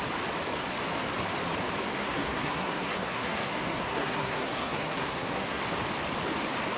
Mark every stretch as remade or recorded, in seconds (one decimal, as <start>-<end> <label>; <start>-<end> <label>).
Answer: 0.0-1.9 recorded; 1.9-5.6 remade; 5.6-6.8 recorded